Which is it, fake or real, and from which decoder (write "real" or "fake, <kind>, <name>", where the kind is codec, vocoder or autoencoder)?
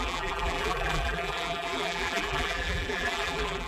fake, vocoder, BigVGAN v2